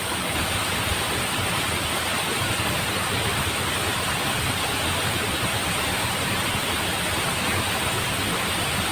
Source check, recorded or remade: recorded